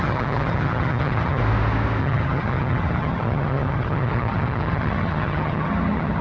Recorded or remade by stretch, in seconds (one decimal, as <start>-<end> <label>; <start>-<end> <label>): 0.0-1.4 remade; 1.4-2.0 recorded; 2.0-6.2 remade